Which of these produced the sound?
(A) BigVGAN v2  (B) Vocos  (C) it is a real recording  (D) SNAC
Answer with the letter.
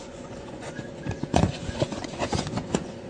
B